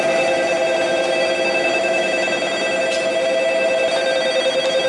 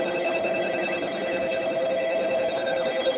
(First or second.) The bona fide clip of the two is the first